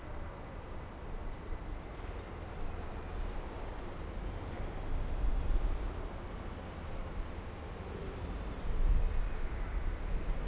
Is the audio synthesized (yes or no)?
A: no